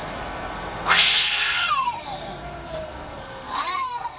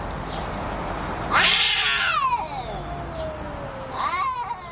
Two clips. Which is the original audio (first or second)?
second